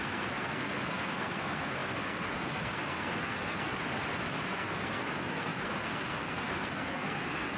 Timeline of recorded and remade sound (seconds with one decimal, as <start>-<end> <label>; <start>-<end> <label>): 0.0-3.7 remade; 3.7-4.5 recorded; 4.5-7.6 remade